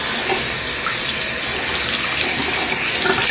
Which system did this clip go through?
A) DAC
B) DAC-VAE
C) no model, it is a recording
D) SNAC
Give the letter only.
C